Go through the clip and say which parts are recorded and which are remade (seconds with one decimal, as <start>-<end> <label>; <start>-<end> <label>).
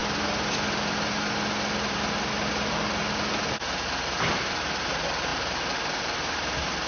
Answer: 0.0-6.9 recorded